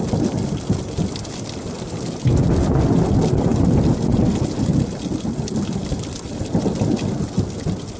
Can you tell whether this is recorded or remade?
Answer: recorded